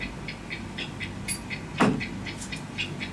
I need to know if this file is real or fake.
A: real